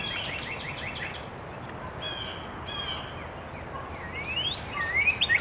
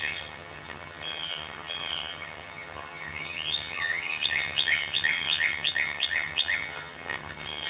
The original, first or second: first